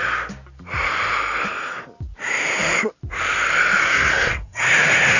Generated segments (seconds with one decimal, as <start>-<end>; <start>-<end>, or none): 3.8-5.2